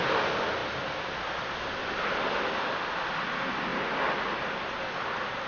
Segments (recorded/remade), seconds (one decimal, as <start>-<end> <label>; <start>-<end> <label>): 0.0-1.8 recorded; 1.8-2.9 remade; 2.9-5.5 recorded